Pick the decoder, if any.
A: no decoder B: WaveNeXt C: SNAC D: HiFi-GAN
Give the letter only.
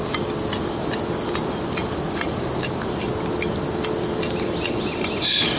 A